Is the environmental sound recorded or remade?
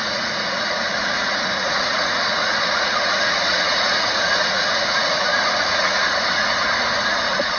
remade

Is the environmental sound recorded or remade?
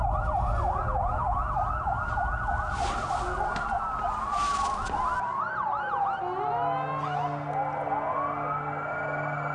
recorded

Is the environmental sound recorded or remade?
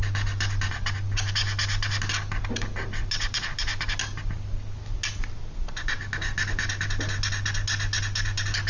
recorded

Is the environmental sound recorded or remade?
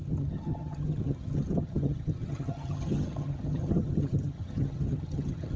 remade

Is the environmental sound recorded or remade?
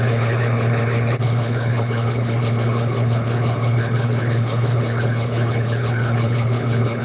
remade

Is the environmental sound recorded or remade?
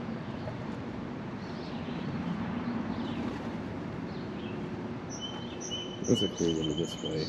remade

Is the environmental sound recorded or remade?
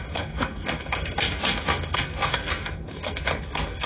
remade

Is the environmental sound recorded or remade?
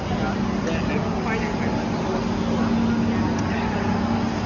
recorded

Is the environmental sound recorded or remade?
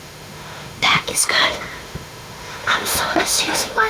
remade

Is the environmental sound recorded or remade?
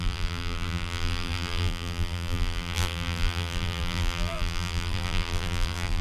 remade